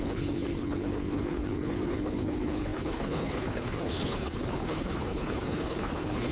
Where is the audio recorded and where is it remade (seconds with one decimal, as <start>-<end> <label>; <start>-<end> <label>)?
0.0-6.3 remade